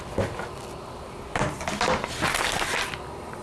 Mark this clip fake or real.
real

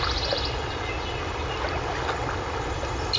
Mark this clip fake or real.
real